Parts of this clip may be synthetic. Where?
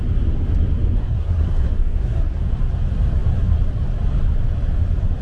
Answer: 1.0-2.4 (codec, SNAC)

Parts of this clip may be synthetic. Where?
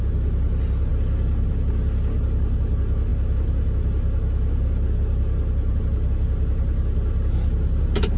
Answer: none